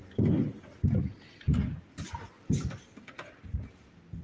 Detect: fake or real real